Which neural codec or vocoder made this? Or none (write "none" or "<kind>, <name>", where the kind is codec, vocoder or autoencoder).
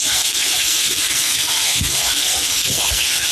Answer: codec, SNAC